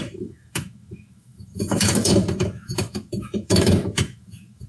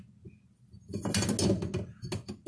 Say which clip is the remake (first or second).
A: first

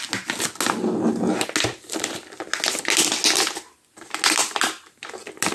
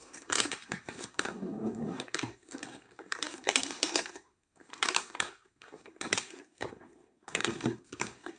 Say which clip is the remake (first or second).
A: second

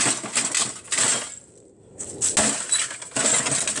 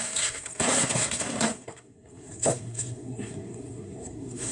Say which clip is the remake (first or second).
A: second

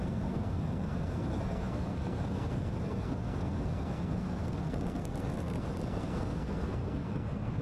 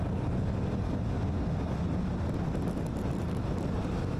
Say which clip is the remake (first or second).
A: first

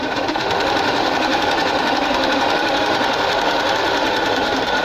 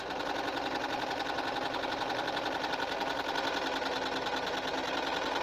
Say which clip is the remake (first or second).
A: first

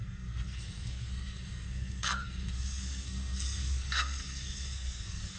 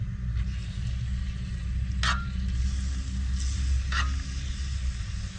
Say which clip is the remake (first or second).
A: first